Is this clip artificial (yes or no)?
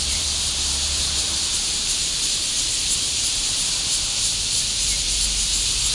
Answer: yes